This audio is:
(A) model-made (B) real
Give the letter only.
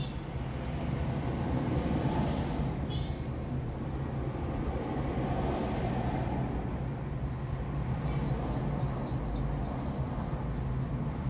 B